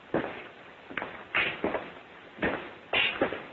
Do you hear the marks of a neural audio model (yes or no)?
no